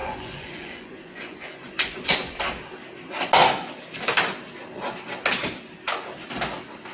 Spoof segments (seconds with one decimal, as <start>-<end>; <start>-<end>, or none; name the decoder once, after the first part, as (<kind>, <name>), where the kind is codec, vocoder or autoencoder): 0.0-2.4 (vocoder, Vocos)